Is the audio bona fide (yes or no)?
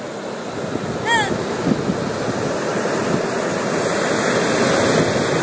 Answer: yes